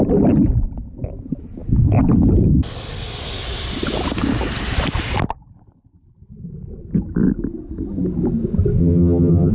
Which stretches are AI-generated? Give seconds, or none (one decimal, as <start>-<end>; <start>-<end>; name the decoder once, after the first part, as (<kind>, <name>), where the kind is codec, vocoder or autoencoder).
8.8-9.5 (vocoder, HiFi-GAN)